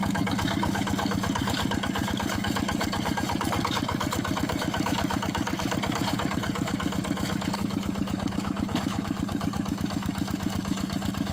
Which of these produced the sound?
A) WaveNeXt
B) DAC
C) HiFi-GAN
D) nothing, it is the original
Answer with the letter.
B